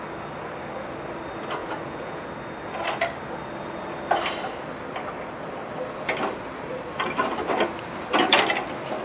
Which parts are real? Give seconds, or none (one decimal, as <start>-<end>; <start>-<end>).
0.0-1.6; 2.3-9.0